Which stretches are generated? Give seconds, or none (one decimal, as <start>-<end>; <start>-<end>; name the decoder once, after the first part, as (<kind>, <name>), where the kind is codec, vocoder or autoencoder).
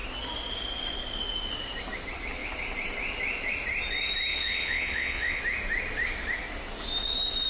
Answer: 4.3-5.4 (vocoder, Vocos)